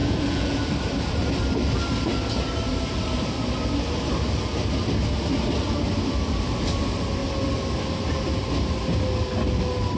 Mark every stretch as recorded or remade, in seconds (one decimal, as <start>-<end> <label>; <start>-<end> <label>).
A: 0.0-0.6 remade; 0.6-10.0 recorded